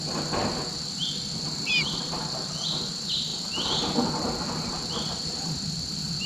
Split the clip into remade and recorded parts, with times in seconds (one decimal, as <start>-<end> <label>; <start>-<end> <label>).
0.0-6.3 recorded

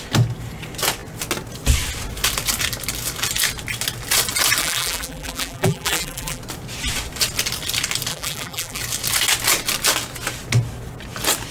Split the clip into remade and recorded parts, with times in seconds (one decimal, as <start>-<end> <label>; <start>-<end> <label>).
0.0-4.6 recorded; 4.6-6.4 remade; 6.4-8.1 recorded; 8.1-8.8 remade; 8.8-11.5 recorded